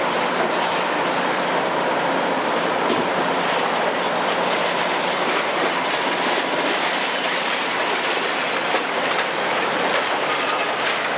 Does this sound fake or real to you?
fake